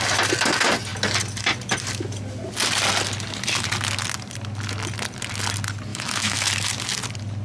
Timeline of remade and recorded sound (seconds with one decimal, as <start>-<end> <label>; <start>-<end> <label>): 0.0-5.9 recorded; 5.9-6.5 remade; 6.5-7.4 recorded